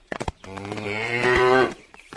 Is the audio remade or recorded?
remade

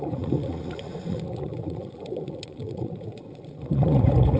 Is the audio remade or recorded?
remade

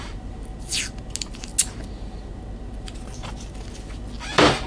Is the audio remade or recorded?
recorded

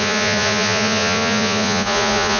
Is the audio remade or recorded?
remade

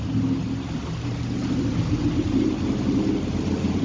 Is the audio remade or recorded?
recorded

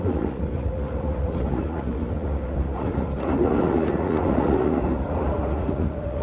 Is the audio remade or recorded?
remade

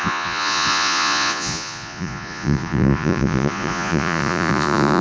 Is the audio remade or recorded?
remade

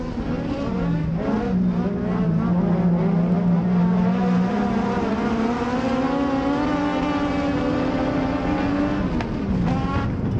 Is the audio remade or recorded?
recorded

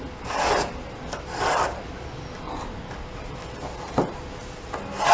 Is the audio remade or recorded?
recorded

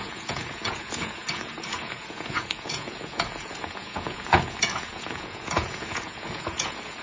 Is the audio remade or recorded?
remade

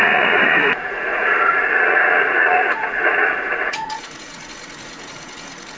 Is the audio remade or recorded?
remade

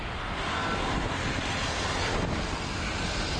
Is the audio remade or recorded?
recorded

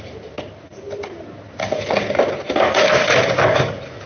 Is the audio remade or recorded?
recorded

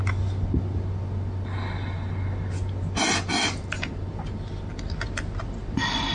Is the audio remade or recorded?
recorded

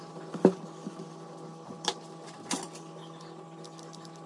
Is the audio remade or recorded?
recorded